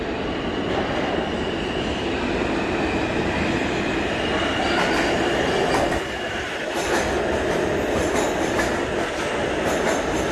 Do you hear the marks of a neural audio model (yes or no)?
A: no